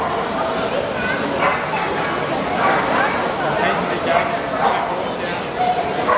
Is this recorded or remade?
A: recorded